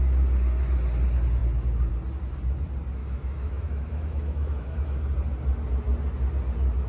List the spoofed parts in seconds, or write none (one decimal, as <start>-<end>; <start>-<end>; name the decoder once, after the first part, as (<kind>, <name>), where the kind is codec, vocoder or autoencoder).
3.0-5.0 (autoencoder, DAC-VAE)